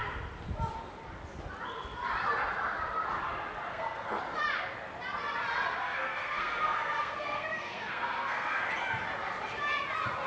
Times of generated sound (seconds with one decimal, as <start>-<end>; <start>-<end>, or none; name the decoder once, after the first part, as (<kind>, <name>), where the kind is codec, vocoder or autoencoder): 3.7-4.2 (codec, SNAC); 5.8-8.7